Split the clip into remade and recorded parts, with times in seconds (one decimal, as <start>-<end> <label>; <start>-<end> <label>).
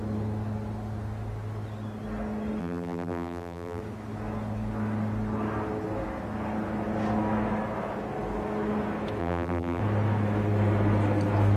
0.0-2.6 recorded; 2.6-3.8 remade; 3.8-9.2 recorded; 9.2-9.8 remade; 9.8-11.6 recorded